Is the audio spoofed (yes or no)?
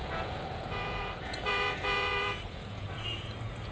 yes